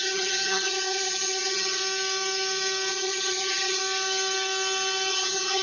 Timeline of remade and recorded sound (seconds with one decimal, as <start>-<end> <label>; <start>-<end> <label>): 0.0-1.8 remade; 1.8-2.9 recorded; 2.9-3.8 remade; 3.8-5.1 recorded; 5.1-5.6 remade